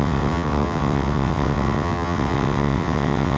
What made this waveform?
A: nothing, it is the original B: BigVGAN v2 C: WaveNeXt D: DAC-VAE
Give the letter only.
C